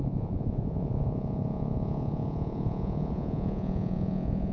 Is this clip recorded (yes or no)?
no